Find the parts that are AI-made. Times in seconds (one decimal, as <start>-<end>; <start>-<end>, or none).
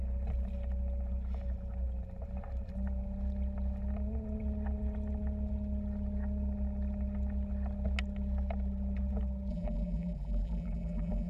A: 9.5-11.3